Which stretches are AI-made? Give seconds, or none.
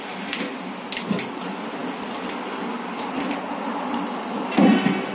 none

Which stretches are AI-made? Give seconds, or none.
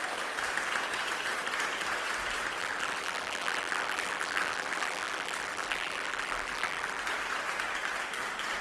2.6-7.0 (vocoder, BigVGAN v2)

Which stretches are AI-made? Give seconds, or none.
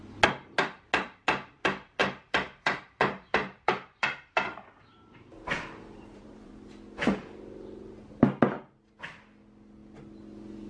2.0-6.5 (vocoder, BigVGAN v2)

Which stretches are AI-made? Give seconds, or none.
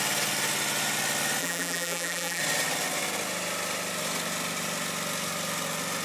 1.4-2.4 (vocoder, BigVGAN v2)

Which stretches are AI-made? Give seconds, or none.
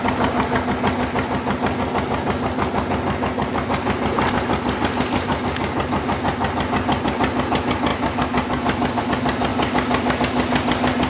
none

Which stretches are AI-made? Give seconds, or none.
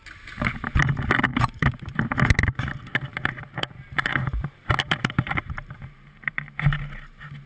1.3-1.9 (vocoder, BigVGAN v2); 3.1-6.8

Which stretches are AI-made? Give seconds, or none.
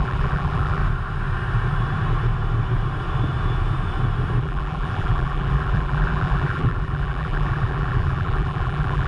0.0-0.8 (vocoder, BigVGAN v2); 4.4-9.1